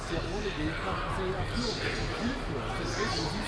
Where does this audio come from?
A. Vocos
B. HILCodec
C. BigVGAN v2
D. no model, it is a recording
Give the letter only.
D